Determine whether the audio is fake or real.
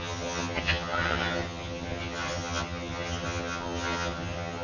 fake